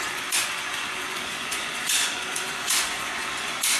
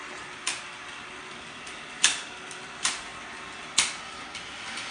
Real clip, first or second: second